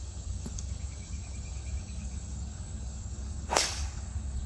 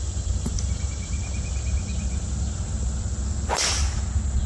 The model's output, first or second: first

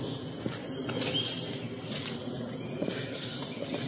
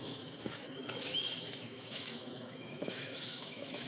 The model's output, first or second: second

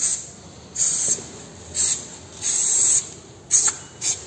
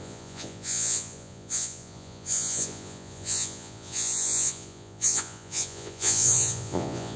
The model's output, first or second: second